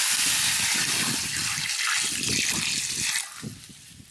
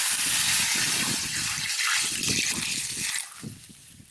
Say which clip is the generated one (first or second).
second